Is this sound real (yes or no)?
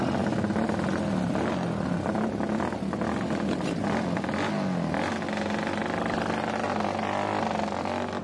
yes